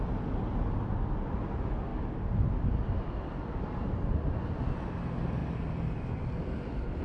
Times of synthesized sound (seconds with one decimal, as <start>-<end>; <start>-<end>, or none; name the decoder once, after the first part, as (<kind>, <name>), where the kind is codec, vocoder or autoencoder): 5.4-7.0 (vocoder, BigVGAN v2)